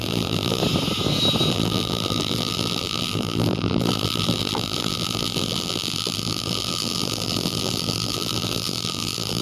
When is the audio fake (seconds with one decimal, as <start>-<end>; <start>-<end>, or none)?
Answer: 0.0-0.6; 1.5-9.4